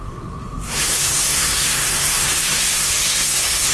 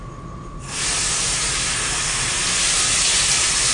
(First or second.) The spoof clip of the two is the first